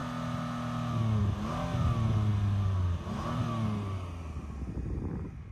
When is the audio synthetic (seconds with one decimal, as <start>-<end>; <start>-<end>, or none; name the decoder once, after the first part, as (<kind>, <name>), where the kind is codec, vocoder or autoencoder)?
none